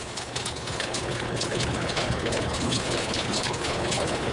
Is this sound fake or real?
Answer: fake